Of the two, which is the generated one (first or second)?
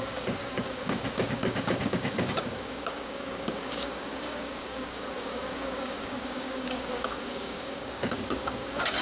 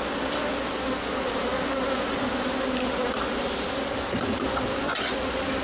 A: first